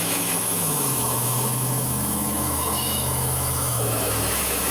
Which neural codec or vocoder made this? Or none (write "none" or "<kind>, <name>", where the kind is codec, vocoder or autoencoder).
autoencoder, DAC-VAE